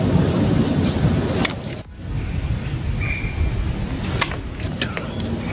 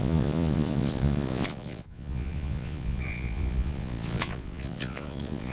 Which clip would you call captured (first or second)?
first